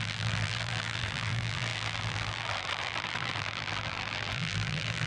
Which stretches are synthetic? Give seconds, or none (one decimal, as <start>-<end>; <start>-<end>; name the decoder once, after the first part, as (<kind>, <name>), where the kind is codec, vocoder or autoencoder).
0.0-5.1 (vocoder, BigVGAN v2)

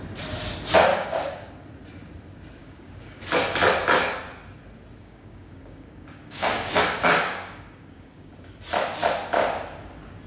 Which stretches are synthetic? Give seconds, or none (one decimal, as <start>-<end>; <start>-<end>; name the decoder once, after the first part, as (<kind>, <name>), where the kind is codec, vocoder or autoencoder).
0.9-1.5 (codec, DAC); 2.6-3.2; 5.0-8.3

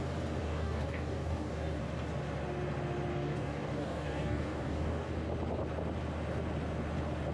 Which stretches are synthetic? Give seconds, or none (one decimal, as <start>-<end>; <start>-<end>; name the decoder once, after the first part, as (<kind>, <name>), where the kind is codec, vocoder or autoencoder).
0.4-1.8 (codec, DAC); 3.1-5.1

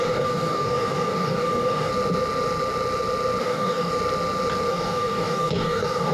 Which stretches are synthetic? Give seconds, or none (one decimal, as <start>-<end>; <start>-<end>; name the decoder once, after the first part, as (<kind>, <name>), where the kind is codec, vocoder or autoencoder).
0.0-1.9 (codec, DAC); 3.4-3.9; 4.7-6.1